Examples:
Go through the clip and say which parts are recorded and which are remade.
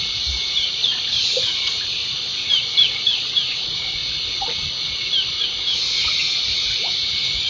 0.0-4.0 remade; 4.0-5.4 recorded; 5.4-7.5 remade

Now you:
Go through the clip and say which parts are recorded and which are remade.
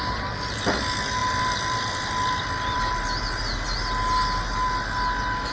0.0-1.2 recorded; 1.2-2.8 remade; 2.8-5.5 recorded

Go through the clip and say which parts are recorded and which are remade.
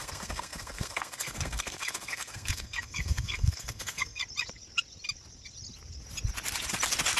0.0-4.2 remade; 4.2-7.2 recorded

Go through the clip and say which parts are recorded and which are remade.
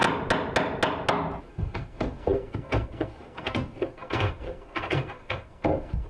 0.0-1.5 recorded; 1.5-6.1 remade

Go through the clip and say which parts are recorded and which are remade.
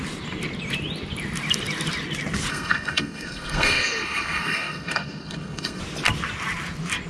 0.0-2.5 recorded; 2.5-5.8 remade; 5.8-7.1 recorded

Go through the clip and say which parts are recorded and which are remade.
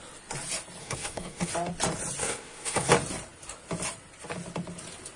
0.0-0.8 recorded; 0.8-1.5 remade; 1.5-2.2 recorded; 2.2-2.9 remade; 2.9-5.2 recorded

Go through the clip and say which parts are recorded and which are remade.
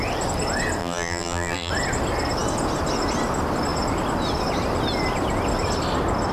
0.0-0.8 recorded; 0.8-1.7 remade; 1.7-6.3 recorded